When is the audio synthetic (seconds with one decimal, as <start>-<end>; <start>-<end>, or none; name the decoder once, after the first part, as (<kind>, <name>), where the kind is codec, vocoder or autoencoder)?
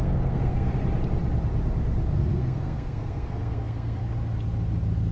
0.0-0.7 (codec, SNAC); 2.1-4.0